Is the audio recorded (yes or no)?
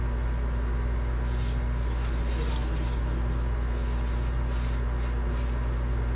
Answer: yes